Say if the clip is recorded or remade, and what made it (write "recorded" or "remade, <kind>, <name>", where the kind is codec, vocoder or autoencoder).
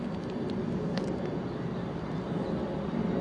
recorded